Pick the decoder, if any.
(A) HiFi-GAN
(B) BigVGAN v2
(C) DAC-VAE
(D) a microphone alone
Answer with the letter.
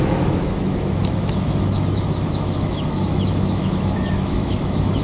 C